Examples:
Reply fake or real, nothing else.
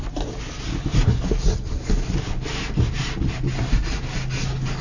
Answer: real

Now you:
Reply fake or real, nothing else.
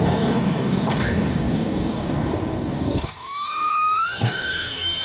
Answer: fake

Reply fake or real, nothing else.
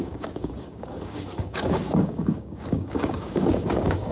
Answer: fake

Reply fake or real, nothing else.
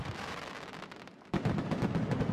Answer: real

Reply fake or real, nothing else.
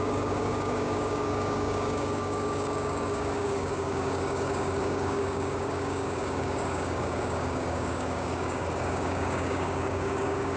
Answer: fake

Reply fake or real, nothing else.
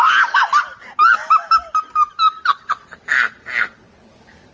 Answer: real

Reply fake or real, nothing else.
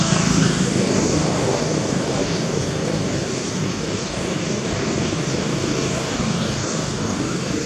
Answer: fake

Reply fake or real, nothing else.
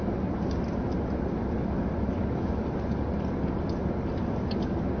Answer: real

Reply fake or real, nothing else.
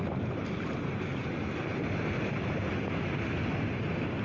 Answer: real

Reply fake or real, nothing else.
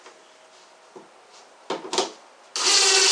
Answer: real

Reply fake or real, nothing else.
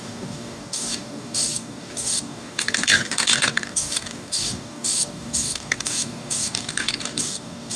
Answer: fake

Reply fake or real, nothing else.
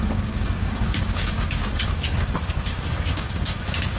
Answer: fake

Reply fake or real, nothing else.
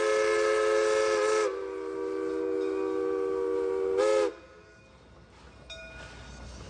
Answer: real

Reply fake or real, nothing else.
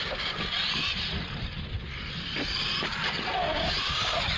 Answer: real